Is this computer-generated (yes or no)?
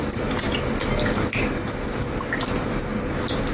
no